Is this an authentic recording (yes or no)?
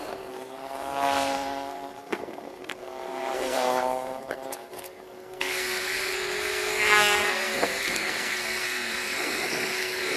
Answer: no